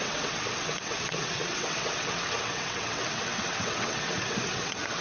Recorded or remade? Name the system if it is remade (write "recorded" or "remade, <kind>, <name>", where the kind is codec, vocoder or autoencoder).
remade, vocoder, WaveNeXt